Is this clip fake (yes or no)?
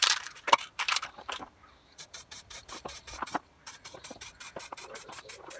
yes